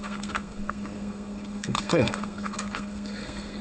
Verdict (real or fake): fake